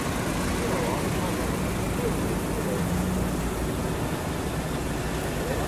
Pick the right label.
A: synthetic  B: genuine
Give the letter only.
B